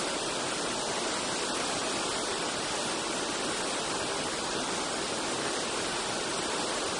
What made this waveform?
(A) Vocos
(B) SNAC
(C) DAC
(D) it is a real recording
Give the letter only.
D